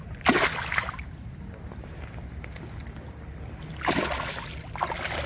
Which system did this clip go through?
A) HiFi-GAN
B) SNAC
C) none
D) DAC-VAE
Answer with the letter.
C